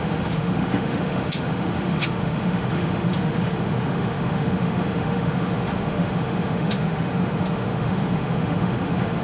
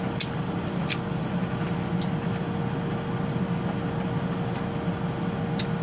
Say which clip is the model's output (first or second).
first